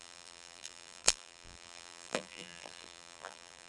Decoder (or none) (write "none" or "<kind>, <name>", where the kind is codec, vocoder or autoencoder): vocoder, BigVGAN v2